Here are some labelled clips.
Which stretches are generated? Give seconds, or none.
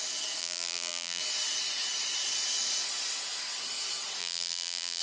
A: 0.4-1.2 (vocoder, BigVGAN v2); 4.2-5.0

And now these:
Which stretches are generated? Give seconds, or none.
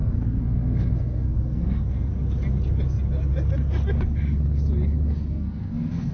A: 0.0-2.1 (codec, SNAC); 5.3-6.1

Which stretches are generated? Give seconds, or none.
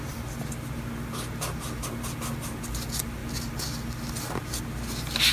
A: none